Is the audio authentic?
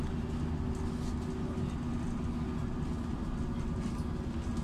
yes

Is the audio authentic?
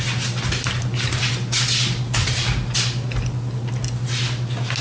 yes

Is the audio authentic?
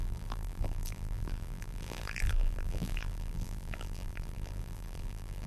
no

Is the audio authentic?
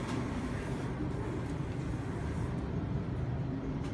no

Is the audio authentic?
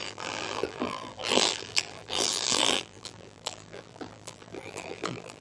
no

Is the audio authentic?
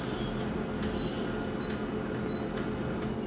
yes